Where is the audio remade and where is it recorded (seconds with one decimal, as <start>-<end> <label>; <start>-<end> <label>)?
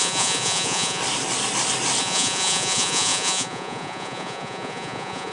0.0-1.0 remade; 1.0-2.0 recorded; 2.0-5.3 remade